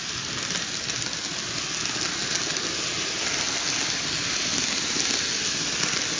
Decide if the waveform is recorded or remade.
recorded